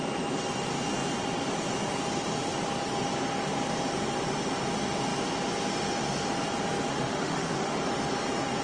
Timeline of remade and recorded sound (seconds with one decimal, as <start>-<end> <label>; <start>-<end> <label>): 0.0-6.9 recorded; 6.9-7.8 remade; 7.8-8.6 recorded